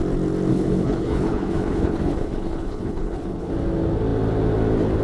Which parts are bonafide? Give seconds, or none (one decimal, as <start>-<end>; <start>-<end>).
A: 0.0-0.5; 3.5-5.0